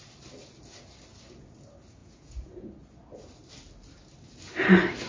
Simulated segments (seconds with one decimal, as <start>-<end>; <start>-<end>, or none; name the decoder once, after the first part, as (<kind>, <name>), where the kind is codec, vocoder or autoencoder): 2.0-2.7 (vocoder, Vocos)